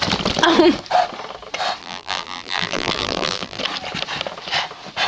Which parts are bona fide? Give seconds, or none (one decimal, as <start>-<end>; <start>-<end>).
0.0-1.8; 3.6-5.1